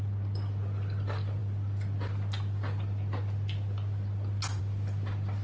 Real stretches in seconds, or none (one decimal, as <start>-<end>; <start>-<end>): 0.0-5.4